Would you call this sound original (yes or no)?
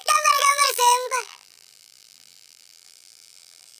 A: no